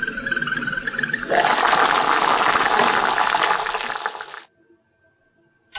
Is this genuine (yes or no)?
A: yes